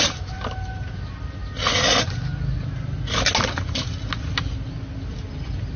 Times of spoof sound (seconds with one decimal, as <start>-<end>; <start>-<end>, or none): none